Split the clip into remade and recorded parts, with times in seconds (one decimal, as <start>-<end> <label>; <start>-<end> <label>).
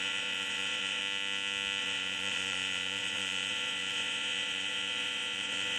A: 0.0-1.0 remade; 1.0-1.8 recorded; 1.8-5.8 remade